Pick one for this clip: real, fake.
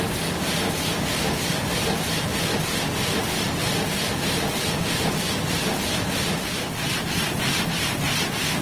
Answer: real